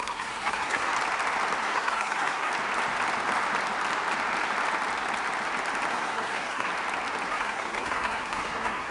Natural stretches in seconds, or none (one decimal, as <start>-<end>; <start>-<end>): 0.9-1.6; 2.5-5.9; 6.7-7.3